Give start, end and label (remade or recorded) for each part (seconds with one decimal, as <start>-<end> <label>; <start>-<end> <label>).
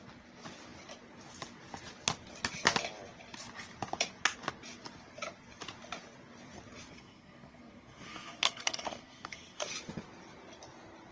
0.0-6.9 recorded; 6.9-9.7 remade; 9.7-11.1 recorded